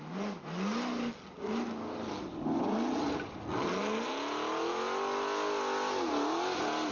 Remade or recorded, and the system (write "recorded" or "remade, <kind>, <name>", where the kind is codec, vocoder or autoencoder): recorded